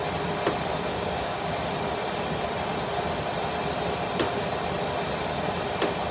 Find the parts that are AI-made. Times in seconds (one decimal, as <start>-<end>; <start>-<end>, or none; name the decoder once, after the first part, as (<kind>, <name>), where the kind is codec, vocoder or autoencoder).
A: 0.9-1.5 (codec, DAC)